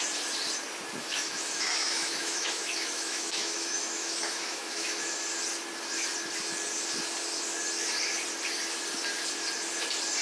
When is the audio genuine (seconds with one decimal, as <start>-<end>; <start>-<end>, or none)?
0.0-1.0; 5.2-10.2